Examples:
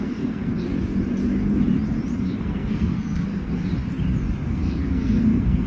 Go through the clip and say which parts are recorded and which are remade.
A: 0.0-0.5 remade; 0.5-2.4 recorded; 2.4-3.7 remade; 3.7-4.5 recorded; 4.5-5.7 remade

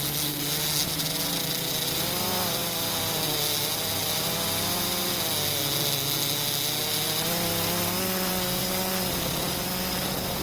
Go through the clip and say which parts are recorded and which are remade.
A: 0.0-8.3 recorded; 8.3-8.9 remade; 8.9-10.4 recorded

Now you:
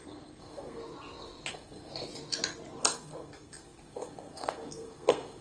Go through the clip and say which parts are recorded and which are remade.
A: 0.0-0.8 remade; 0.8-1.5 recorded; 1.5-1.9 remade; 1.9-2.8 recorded; 2.8-5.4 remade

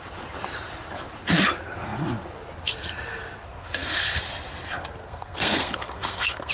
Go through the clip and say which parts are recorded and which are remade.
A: 0.0-3.5 recorded; 3.5-4.2 remade; 4.2-5.0 recorded; 5.0-6.5 remade